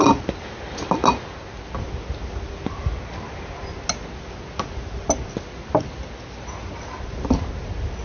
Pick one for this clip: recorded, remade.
recorded